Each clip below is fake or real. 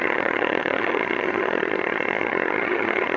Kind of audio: fake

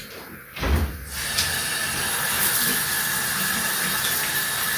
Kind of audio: real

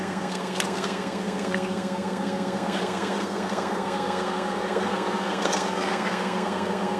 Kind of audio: fake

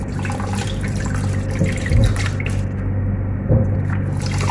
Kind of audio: real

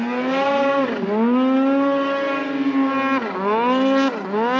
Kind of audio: real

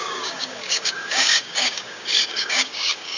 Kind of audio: fake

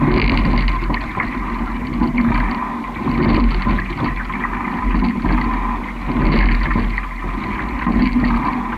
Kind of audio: real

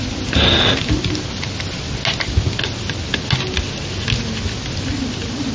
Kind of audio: real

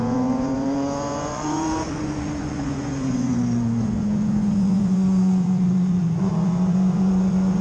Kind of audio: fake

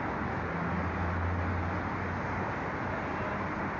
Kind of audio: real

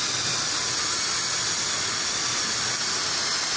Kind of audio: real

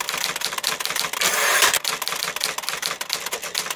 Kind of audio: real